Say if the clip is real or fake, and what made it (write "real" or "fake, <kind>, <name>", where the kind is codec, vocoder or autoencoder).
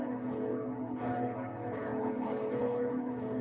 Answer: fake, codec, HILCodec